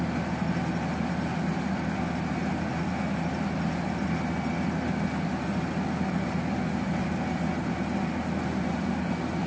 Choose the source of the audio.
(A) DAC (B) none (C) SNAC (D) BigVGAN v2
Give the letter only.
B